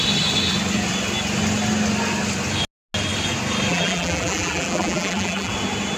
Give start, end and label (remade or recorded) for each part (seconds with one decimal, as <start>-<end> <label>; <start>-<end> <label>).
0.0-3.7 recorded; 3.7-5.5 remade; 5.5-6.0 recorded